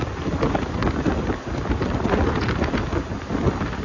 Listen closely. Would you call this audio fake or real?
real